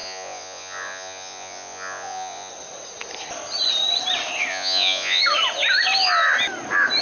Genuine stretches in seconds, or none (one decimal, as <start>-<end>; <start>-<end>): 2.5-4.5; 5.2-7.0